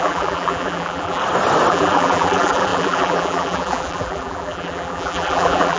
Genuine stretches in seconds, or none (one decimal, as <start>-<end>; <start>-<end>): 1.2-1.7